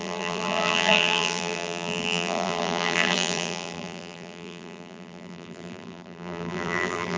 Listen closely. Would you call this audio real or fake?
fake